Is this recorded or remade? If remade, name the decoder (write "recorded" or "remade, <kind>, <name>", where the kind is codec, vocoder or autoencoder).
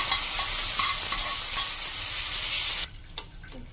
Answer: recorded